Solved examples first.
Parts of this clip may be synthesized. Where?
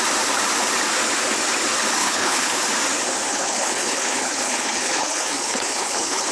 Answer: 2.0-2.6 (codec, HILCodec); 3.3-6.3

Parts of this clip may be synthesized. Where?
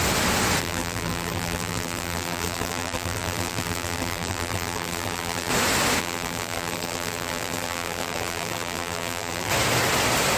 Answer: 0.6-5.5 (vocoder, BigVGAN v2); 6.0-9.5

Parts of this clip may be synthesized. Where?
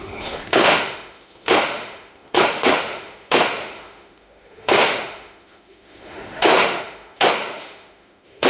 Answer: 0.0-8.5 (autoencoder, DAC-VAE)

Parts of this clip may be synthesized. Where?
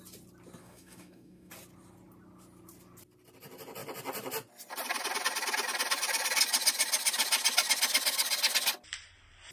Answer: 0.6-1.5 (codec, DAC)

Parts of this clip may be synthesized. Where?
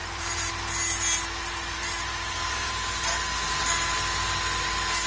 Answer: 0.0-0.5 (vocoder, BigVGAN v2); 1.4-3.6